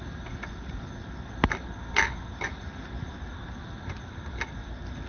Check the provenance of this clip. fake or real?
real